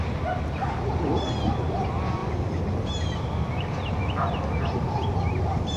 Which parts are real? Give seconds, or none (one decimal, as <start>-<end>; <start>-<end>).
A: 0.0-5.8